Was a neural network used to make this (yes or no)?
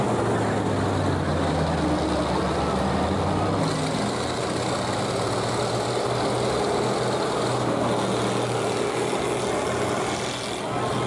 no